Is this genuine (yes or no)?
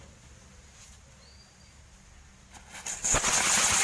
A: yes